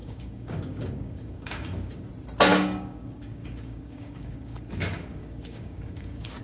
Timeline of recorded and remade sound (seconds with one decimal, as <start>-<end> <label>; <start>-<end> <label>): 0.0-2.1 remade; 2.1-2.5 recorded; 2.5-6.4 remade